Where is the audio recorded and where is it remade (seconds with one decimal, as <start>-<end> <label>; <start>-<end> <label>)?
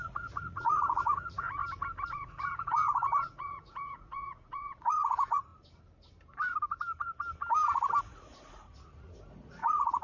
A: 0.0-1.6 remade; 1.6-2.1 recorded; 2.1-5.5 remade; 5.5-8.0 recorded; 8.0-10.0 remade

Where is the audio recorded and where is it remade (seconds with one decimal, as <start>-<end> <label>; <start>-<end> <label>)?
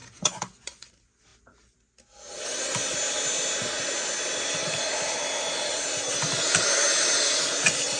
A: 0.0-0.9 remade; 0.9-8.0 recorded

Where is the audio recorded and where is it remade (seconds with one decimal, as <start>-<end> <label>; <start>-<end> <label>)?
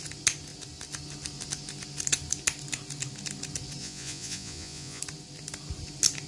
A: 0.0-3.8 recorded; 3.8-5.0 remade; 5.0-6.3 recorded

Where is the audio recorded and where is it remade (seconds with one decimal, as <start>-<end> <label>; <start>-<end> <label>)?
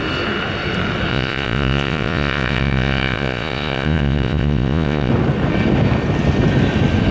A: 0.0-1.1 recorded; 1.1-5.1 remade; 5.1-7.1 recorded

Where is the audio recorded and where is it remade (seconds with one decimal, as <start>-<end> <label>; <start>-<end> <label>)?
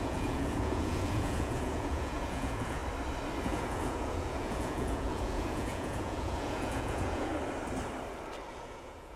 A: 0.0-2.8 remade; 2.8-3.4 recorded; 3.4-7.3 remade; 7.3-8.5 recorded; 8.5-9.2 remade